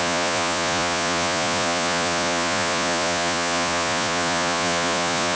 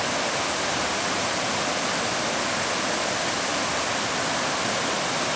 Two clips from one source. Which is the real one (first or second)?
second